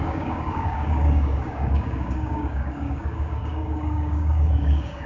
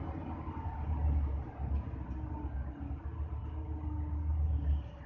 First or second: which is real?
second